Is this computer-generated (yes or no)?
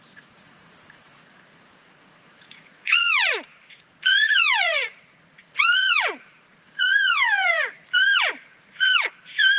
yes